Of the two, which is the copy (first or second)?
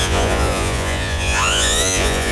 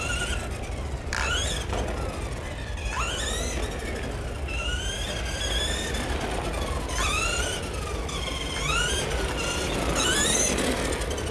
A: first